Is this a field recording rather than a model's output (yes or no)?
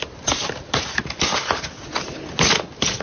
yes